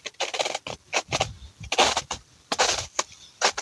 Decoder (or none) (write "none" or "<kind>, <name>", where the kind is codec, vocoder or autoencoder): none